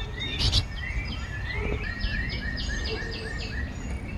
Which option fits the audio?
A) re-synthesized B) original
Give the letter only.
B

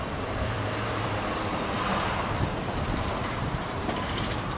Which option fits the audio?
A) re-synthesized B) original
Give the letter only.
A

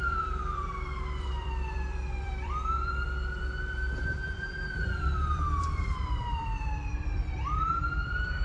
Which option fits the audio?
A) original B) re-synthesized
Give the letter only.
B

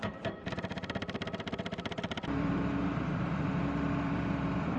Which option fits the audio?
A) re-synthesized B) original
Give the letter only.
A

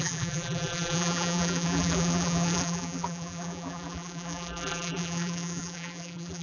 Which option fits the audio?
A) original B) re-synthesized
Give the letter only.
B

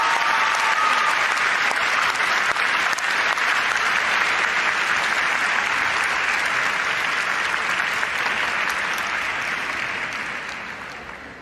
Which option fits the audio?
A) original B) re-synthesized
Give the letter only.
A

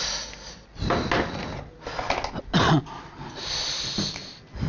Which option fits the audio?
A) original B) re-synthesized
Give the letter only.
A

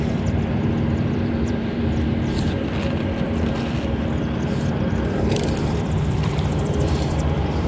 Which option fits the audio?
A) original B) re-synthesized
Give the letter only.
B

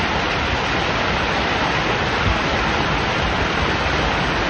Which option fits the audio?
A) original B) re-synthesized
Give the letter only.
A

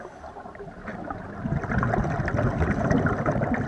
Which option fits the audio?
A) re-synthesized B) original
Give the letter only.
B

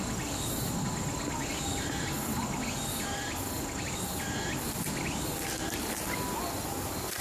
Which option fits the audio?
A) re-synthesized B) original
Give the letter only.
B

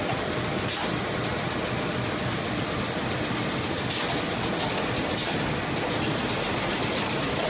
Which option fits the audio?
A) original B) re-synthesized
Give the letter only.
A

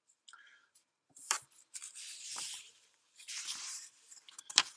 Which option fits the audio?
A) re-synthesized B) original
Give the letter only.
A